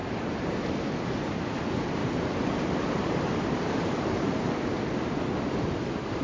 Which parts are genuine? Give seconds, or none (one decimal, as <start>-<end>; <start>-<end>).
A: 0.0-2.0; 4.8-6.2